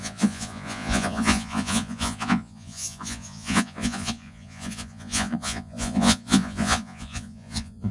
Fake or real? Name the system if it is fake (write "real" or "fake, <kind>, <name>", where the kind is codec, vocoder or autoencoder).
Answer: fake, vocoder, Vocos